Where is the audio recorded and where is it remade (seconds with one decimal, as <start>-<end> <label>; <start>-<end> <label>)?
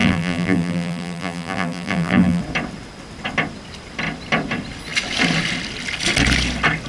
0.0-2.4 remade; 2.4-6.9 recorded